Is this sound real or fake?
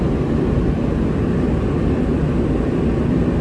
real